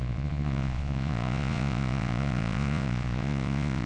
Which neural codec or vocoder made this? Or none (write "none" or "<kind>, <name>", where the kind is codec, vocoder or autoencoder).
vocoder, Vocos